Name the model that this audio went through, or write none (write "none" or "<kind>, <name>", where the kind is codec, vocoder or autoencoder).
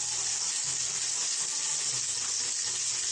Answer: none